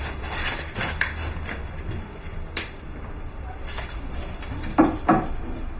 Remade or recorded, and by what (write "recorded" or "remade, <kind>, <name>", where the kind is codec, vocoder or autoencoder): recorded